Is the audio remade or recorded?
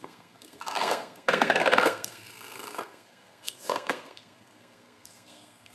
remade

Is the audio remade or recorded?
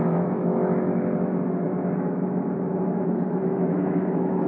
remade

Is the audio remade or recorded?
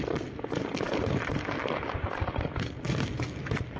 recorded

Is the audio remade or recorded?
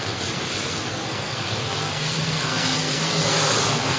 remade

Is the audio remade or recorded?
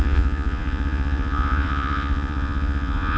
remade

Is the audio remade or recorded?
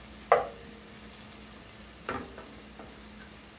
recorded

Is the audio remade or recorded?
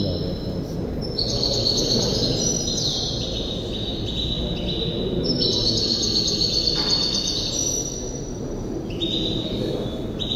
recorded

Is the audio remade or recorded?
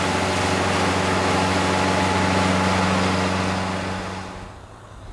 recorded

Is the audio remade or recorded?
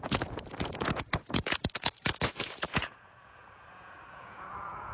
remade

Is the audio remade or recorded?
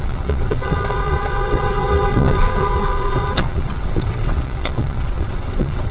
remade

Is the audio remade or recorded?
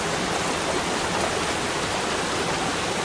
recorded